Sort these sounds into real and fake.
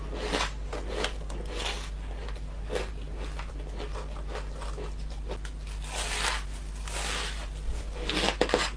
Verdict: real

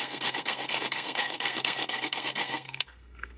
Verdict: fake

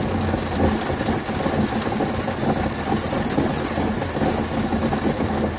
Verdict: real